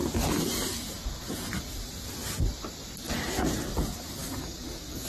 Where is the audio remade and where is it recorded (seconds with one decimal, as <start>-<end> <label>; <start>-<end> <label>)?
0.0-4.2 recorded; 4.2-5.1 remade